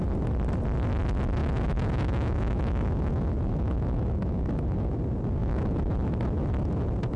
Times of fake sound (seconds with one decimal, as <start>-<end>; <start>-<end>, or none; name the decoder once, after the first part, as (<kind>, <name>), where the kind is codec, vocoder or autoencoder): 1.4-5.0 (autoencoder, DAC-VAE); 5.4-5.9